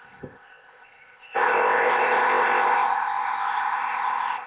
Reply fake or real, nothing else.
fake